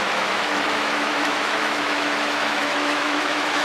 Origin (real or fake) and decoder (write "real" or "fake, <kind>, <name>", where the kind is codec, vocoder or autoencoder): fake, autoencoder, DAC-VAE